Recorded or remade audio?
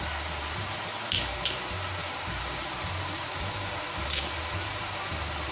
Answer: remade